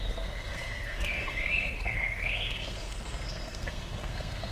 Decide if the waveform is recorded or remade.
remade